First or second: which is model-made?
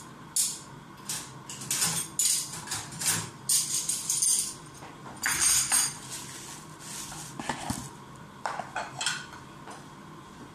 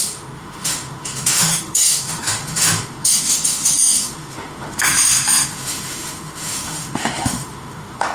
second